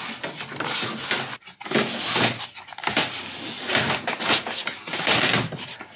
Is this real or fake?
real